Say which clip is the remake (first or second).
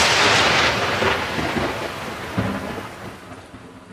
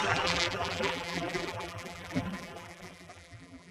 second